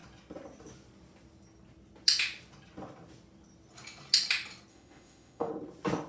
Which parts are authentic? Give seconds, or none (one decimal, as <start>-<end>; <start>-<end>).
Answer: 0.0-4.7; 5.5-6.1